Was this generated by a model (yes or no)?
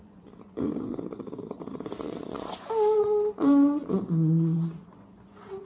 yes